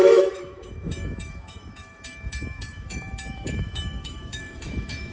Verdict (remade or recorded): remade